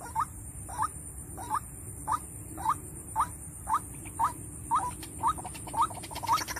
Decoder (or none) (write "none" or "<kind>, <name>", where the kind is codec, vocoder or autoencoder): none